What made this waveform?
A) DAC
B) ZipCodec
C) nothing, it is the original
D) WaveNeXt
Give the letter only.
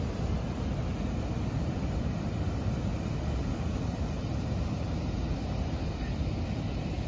C